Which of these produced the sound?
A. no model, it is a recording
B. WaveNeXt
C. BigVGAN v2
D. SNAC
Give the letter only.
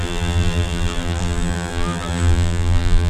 C